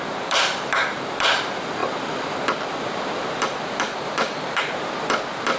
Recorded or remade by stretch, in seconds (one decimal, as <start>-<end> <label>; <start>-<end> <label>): 0.0-5.6 remade